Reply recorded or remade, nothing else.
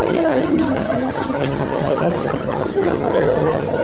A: remade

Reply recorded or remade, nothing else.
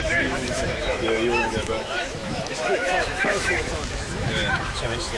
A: remade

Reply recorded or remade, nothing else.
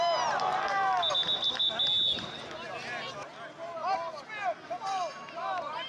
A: recorded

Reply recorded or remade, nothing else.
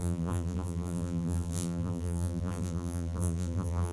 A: remade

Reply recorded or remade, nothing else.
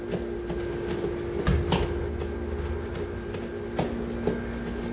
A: recorded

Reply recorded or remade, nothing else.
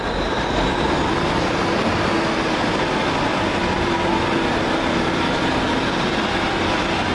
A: recorded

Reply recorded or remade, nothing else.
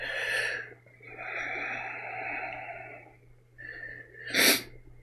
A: recorded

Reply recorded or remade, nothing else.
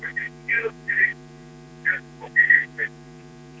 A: remade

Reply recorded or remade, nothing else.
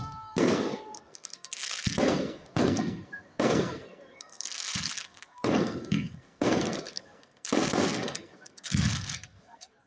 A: remade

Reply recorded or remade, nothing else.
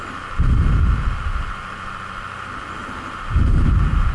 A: remade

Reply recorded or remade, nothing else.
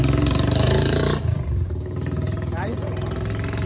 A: remade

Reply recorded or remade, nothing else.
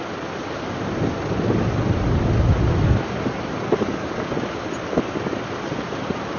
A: recorded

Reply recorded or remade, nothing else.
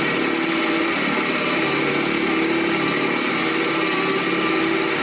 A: recorded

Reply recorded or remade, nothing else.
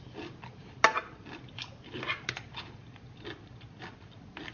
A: recorded